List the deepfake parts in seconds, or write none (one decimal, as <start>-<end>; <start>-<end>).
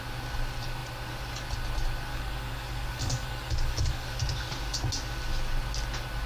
2.1-4.2